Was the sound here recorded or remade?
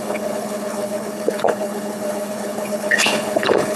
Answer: remade